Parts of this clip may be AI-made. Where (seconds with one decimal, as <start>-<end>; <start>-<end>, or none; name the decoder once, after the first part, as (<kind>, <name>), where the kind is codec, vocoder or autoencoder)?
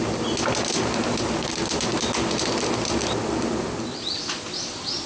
none